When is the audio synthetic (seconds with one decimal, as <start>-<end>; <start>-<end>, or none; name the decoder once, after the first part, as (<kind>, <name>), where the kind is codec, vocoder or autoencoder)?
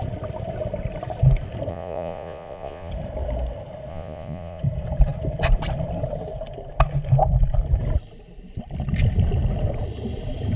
1.7-2.9 (vocoder, Vocos); 3.9-4.6